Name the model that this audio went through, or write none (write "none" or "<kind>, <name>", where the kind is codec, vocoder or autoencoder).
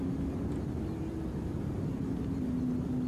none